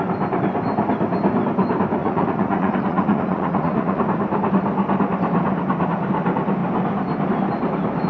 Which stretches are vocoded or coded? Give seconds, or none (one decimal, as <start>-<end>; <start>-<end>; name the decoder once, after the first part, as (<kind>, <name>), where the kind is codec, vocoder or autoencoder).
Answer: 2.0-4.0 (vocoder, Vocos)